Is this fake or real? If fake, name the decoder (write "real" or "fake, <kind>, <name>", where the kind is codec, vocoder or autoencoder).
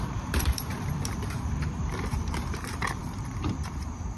fake, vocoder, BigVGAN v2